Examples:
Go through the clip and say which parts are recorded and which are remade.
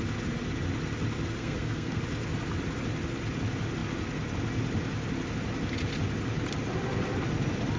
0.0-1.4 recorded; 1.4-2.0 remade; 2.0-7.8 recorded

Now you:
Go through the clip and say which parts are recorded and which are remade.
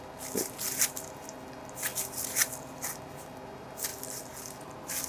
0.0-5.1 recorded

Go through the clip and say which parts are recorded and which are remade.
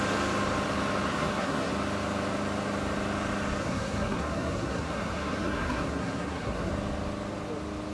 0.0-1.1 recorded; 1.1-1.7 remade; 1.7-3.6 recorded; 3.6-6.7 remade; 6.7-7.9 recorded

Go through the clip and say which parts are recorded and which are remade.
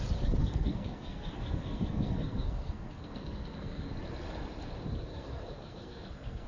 0.0-0.4 recorded; 0.4-3.9 remade; 3.9-5.1 recorded; 5.1-6.5 remade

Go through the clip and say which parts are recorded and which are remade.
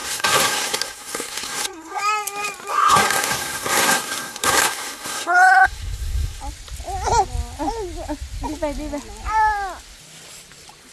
0.0-2.0 remade; 2.0-2.7 recorded; 2.7-6.4 remade; 6.4-10.9 recorded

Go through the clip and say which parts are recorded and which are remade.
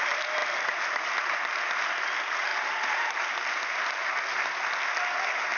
0.0-5.6 recorded